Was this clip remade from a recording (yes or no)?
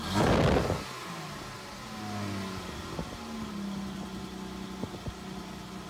no